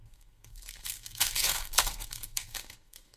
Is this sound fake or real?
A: fake